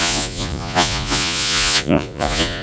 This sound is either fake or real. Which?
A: fake